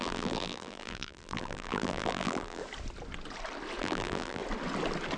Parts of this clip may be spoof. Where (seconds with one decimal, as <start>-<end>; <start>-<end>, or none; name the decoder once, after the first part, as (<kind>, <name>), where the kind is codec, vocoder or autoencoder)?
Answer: 0.0-2.6 (vocoder, BigVGAN v2); 3.8-4.4